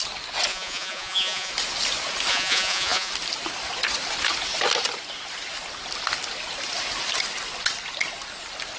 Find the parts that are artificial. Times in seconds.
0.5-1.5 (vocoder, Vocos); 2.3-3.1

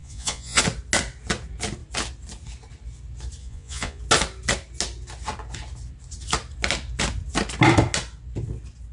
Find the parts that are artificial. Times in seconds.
0.0-0.6 (vocoder, Vocos); 3.4-4.0

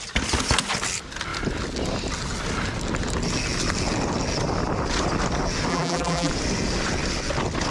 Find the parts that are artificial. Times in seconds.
5.7-6.3 (vocoder, BigVGAN v2)

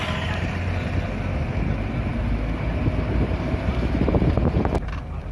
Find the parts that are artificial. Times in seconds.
3.7-5.3 (vocoder, BigVGAN v2)

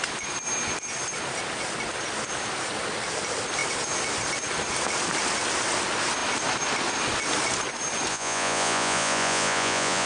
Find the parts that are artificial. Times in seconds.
8.1-10.1 (vocoder, Vocos)

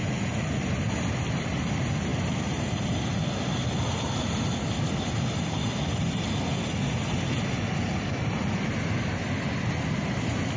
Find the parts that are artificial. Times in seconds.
none

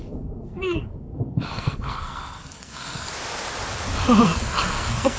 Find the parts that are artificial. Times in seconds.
0.0-3.1 (codec, SNAC); 4.2-5.2

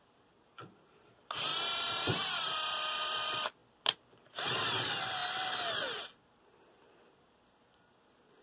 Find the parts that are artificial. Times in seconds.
0.0-1.5 (vocoder, BigVGAN v2); 2.2-5.2; 6.4-8.4